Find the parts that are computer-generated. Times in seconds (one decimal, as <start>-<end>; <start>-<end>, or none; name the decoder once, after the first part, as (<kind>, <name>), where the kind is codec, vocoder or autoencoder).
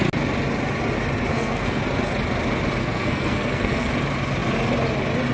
1.3-1.8 (codec, SNAC); 2.8-3.9